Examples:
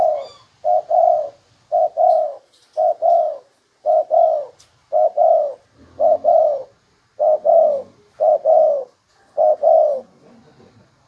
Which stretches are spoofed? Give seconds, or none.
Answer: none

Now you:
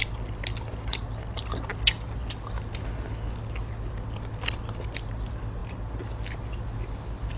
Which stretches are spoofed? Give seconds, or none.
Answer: none